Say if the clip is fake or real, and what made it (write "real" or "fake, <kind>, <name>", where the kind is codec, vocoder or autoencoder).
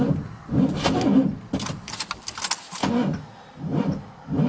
real